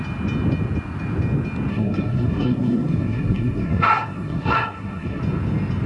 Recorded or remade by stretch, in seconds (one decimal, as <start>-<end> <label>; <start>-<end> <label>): 0.0-1.7 recorded; 1.7-5.2 remade; 5.2-5.9 recorded